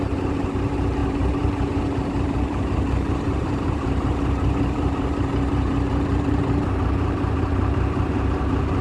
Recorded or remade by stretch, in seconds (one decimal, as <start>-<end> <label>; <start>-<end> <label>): 0.0-8.8 remade